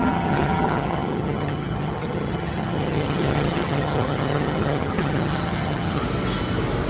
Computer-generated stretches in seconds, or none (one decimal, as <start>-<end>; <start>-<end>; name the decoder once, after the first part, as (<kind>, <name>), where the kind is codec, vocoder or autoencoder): 0.0-6.0 (vocoder, HiFi-GAN)